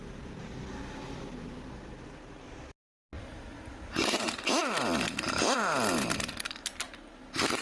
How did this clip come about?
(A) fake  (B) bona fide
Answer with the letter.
B